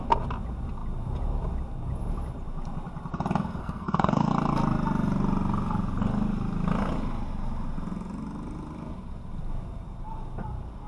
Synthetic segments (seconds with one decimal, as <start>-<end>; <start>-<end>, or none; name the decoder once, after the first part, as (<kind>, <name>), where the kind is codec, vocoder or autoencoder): 3.6-4.3 (codec, SNAC)

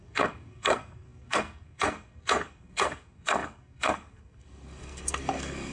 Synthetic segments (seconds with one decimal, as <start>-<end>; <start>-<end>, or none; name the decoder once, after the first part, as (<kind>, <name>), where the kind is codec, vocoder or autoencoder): 0.0-5.7 (codec, SNAC)

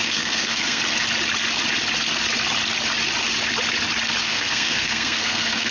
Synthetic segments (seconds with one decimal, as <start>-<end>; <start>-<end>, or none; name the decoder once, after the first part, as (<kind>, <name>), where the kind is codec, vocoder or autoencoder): 0.0-0.8 (codec, SNAC); 4.2-5.7

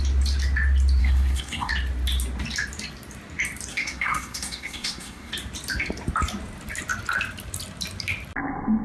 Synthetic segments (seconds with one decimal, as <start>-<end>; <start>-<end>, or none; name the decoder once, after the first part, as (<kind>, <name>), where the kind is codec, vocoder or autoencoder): 1.0-1.7 (codec, SNAC); 3.7-5.3

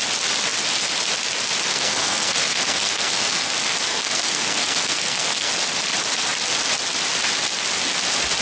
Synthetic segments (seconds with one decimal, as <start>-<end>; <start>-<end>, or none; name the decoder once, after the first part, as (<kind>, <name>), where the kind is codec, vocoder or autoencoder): 1.7-3.5 (codec, SNAC); 3.9-5.5

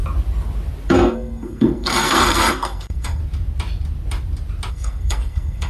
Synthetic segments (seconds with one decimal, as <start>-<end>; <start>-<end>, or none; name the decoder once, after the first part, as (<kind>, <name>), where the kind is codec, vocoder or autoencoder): 0.9-3.2 (codec, SNAC); 4.7-5.7

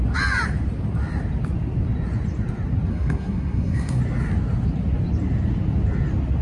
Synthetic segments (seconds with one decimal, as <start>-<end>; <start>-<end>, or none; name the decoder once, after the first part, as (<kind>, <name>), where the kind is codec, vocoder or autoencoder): 2.9-4.0 (codec, SNAC)